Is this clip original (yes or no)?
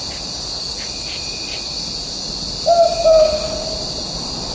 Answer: yes